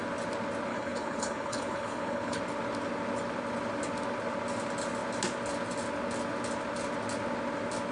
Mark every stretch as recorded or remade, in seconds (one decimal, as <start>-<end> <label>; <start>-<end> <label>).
0.0-0.7 recorded; 0.7-2.4 remade; 2.4-7.9 recorded